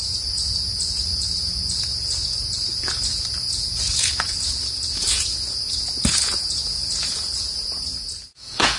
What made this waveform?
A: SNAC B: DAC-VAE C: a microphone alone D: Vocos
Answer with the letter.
D